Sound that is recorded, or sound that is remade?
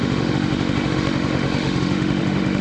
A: remade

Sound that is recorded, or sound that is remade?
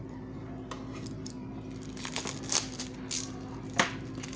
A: recorded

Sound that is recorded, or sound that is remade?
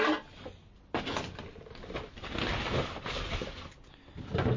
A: recorded